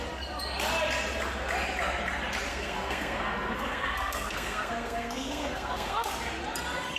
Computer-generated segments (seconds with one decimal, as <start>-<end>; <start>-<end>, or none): 2.5-6.1